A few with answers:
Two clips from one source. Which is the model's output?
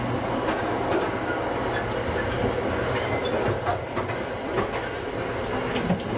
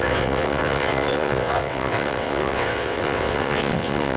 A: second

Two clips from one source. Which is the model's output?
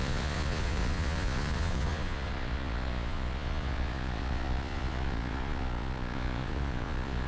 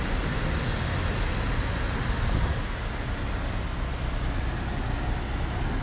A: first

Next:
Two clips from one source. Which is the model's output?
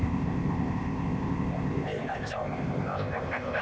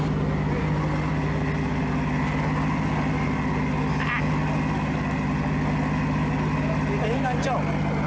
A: first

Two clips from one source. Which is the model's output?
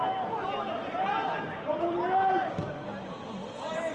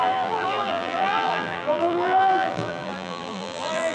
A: second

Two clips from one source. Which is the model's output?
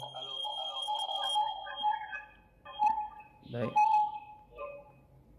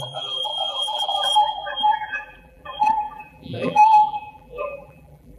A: second